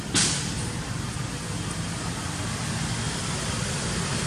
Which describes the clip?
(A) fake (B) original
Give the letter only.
B